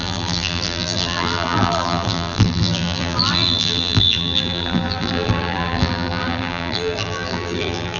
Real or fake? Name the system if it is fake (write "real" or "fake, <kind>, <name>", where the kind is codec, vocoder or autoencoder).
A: fake, vocoder, BigVGAN v2